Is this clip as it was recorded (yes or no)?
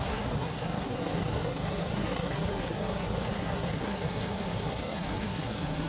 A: no